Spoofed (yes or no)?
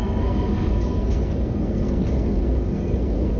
yes